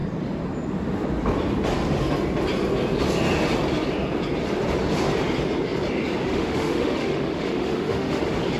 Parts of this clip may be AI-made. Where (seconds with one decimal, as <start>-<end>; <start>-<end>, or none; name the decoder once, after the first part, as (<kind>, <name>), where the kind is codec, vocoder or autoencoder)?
6.3-8.2 (autoencoder, DAC-VAE)